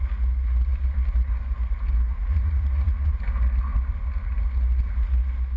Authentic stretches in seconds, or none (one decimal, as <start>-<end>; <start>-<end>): 0.0-2.2; 3.1-5.6